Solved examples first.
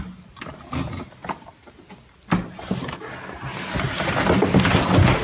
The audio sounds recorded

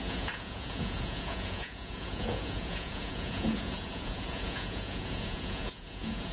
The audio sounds remade